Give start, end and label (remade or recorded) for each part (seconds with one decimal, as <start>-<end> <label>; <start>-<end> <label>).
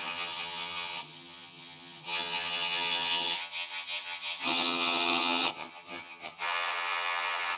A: 0.0-7.6 remade